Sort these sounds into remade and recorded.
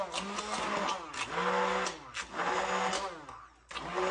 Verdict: recorded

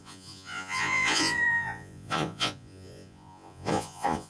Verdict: remade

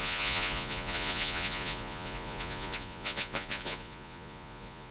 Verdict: remade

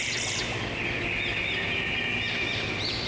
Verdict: recorded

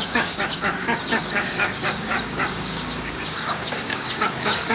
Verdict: remade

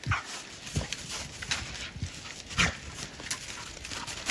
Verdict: recorded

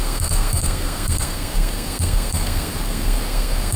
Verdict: remade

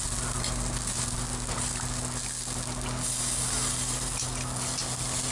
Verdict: recorded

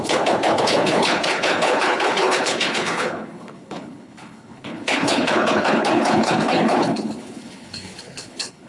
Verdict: remade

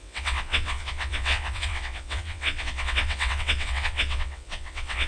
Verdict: remade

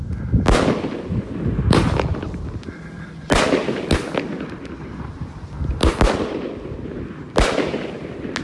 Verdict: recorded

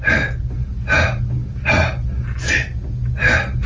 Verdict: recorded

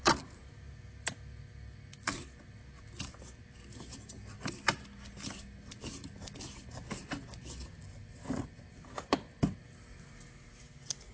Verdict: recorded